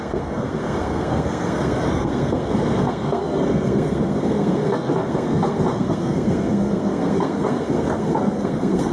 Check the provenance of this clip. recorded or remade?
remade